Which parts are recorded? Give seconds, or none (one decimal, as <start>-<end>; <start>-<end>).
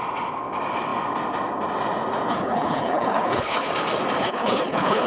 0.0-2.3; 3.7-4.2